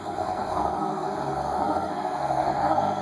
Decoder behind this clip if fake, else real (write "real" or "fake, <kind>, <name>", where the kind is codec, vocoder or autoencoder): fake, codec, SNAC